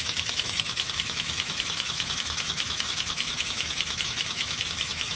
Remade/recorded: remade